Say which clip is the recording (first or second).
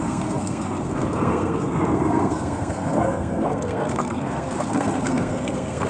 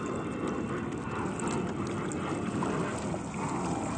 second